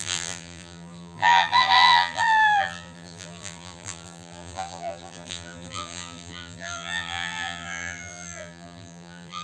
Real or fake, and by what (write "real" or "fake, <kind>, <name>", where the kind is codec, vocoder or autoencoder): fake, vocoder, BigVGAN v2